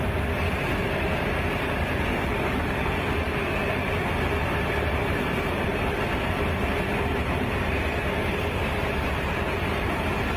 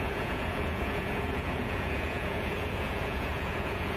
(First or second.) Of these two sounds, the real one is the first